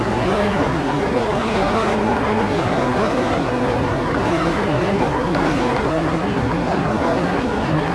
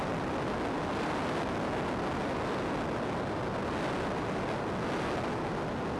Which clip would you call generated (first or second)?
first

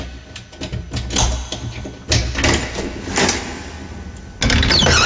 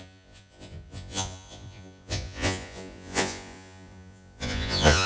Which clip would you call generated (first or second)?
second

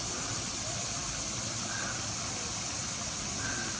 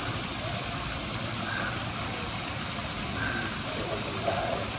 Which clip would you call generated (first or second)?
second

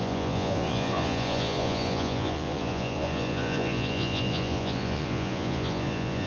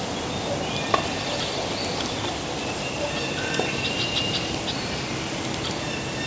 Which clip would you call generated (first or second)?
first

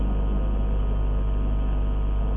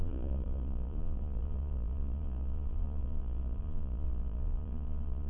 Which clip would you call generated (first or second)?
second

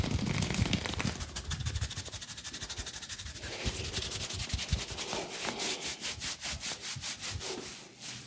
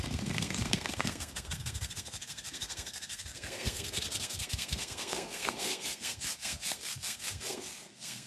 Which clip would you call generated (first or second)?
second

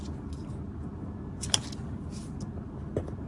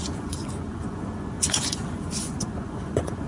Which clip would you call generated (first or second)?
second